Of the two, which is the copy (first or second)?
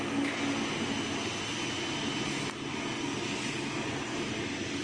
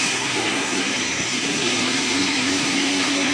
second